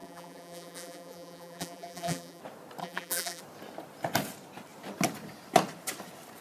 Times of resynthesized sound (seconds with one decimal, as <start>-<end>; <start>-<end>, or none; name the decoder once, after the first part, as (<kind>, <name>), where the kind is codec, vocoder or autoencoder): 0.0-2.4 (vocoder, BigVGAN v2); 2.8-3.4